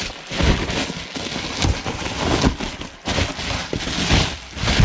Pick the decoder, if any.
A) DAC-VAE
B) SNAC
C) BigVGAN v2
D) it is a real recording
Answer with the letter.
D